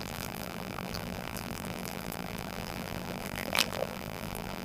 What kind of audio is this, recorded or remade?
remade